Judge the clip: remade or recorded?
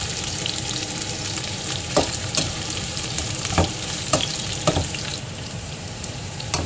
remade